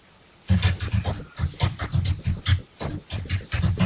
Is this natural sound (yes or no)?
yes